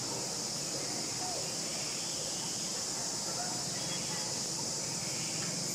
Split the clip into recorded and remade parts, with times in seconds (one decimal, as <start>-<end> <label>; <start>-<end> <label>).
0.0-5.7 recorded